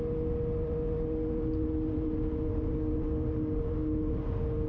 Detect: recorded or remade recorded